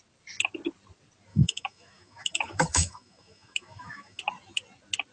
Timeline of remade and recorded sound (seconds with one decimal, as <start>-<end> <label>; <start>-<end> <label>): 0.0-1.3 recorded; 1.3-4.2 remade; 4.2-5.1 recorded